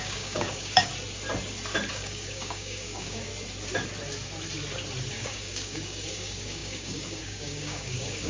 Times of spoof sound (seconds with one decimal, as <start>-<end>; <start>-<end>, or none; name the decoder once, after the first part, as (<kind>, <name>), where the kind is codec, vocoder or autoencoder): 0.0-0.9 (codec, DAC); 1.9-3.3; 5.1-8.3